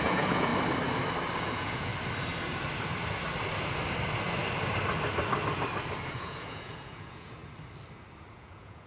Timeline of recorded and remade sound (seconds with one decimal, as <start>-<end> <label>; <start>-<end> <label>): 0.0-0.5 remade; 0.5-1.4 recorded; 1.4-1.9 remade; 1.9-6.1 recorded; 6.1-7.4 remade; 7.4-8.3 recorded; 8.3-8.9 remade